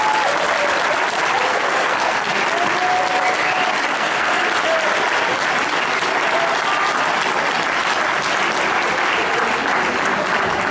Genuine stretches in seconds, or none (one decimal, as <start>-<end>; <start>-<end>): 0.0-1.5; 2.3-3.9; 4.4-10.7